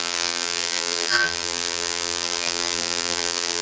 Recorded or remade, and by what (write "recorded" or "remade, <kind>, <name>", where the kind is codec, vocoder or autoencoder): remade, vocoder, BigVGAN v2